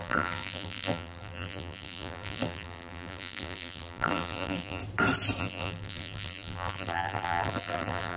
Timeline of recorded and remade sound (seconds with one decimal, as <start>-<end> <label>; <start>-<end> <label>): 0.0-4.8 remade; 4.8-5.4 recorded; 5.4-8.2 remade